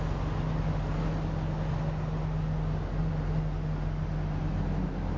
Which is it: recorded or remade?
recorded